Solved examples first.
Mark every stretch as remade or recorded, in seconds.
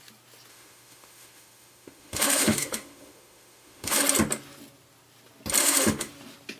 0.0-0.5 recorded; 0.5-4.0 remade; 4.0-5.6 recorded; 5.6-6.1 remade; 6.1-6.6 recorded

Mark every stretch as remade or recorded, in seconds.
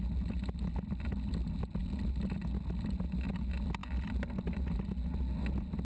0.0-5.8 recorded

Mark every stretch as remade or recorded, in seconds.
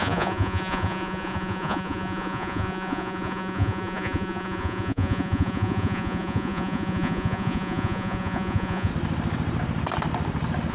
0.0-8.9 remade; 8.9-10.7 recorded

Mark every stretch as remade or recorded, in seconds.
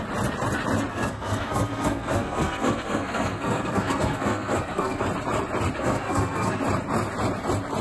0.0-0.9 recorded; 0.9-5.0 remade; 5.0-5.8 recorded; 5.8-6.6 remade; 6.6-7.8 recorded